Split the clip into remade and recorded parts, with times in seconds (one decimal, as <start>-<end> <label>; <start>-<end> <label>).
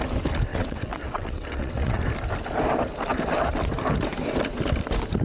0.0-0.5 recorded; 0.5-2.0 remade; 2.0-5.2 recorded